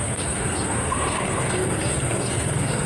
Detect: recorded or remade remade